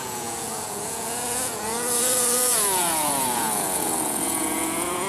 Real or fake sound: fake